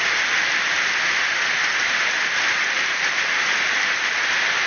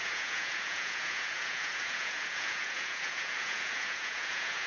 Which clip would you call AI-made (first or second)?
second